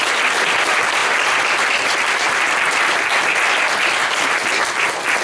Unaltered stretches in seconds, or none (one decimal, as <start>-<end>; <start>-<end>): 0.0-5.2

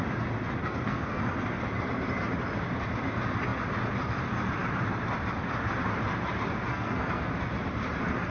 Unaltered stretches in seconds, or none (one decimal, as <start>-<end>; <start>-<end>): 0.0-0.6; 1.2-6.7; 7.3-8.3

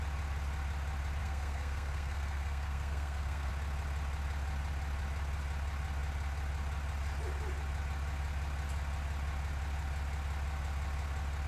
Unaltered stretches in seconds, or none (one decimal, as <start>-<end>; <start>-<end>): 0.0-1.2; 3.5-11.5

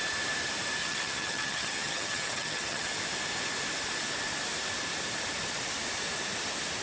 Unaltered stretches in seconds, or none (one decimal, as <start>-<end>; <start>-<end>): 0.0-0.8; 2.9-6.8